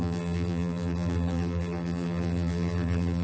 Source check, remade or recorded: remade